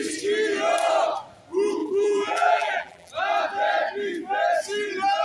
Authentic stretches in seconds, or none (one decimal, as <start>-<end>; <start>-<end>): 0.0-1.8; 3.1-5.2